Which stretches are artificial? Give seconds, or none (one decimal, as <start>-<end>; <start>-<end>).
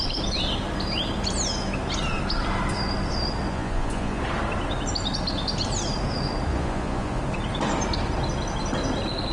3.5-4.2; 6.5-7.2